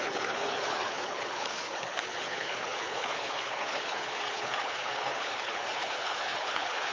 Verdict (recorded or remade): remade